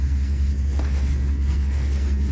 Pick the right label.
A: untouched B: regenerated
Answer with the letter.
B